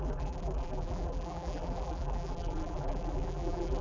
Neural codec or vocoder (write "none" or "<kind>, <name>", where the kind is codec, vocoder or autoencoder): vocoder, BigVGAN v2